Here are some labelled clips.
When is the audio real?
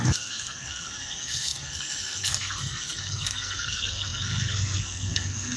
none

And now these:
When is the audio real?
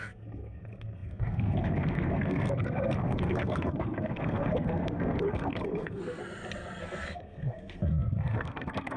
6.2-6.8